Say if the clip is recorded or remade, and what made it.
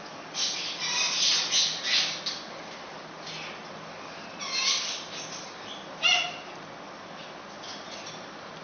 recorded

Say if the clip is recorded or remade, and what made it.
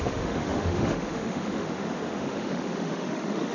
remade, autoencoder, DAC-VAE